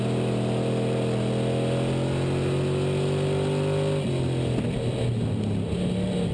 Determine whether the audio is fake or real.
real